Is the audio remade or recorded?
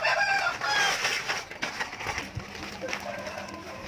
recorded